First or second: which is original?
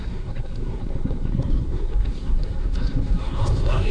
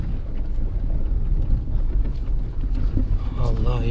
second